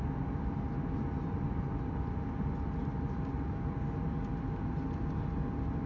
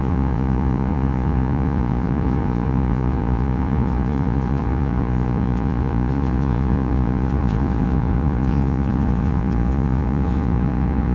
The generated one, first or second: second